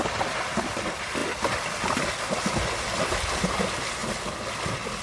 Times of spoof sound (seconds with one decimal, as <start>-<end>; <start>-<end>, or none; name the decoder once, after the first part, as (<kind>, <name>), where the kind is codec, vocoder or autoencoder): none